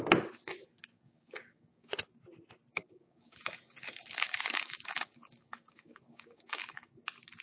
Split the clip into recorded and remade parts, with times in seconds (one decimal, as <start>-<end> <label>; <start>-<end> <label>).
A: 0.0-0.9 recorded; 0.9-1.9 remade; 1.9-2.7 recorded; 2.7-7.0 remade; 7.0-7.4 recorded